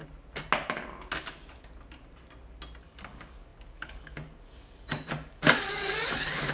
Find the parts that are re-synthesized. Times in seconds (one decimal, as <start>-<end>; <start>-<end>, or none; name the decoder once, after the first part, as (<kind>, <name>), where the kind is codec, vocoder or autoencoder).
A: 2.8-6.5 (codec, DAC)